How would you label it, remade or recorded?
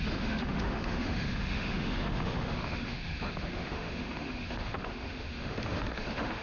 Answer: remade